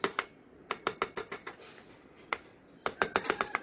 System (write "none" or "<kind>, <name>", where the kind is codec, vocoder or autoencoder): none